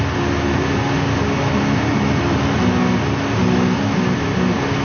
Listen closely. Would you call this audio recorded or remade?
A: recorded